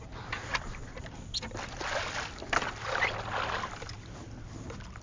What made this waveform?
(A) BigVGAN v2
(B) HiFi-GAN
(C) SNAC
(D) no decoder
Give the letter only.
D